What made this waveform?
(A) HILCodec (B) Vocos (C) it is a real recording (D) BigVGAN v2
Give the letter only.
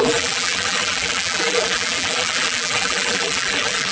D